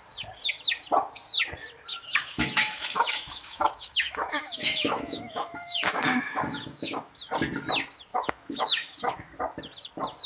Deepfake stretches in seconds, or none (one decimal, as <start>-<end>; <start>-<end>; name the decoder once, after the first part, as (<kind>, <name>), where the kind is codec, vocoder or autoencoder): 1.9-7.1 (autoencoder, DAC-VAE); 8.1-9.3